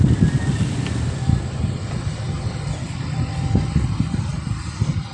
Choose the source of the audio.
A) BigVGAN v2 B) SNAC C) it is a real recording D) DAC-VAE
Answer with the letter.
A